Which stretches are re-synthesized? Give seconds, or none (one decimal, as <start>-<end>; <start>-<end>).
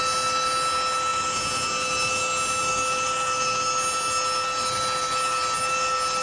none